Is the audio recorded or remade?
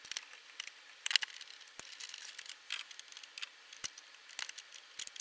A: recorded